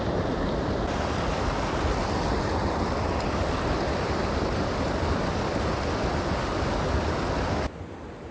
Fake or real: real